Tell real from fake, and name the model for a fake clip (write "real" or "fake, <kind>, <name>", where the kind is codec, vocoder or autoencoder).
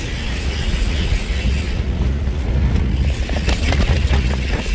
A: fake, vocoder, Vocos